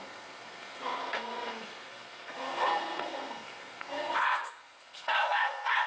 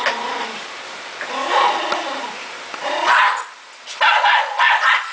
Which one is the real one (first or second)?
second